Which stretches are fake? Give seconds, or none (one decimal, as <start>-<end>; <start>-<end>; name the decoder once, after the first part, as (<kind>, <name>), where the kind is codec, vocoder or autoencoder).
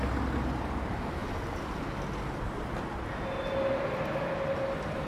none